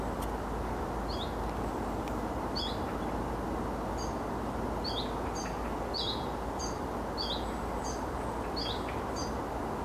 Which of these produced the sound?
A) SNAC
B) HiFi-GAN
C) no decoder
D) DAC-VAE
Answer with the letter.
C